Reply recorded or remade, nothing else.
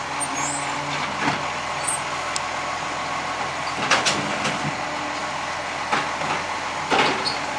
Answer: recorded